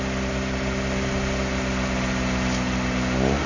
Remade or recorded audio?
recorded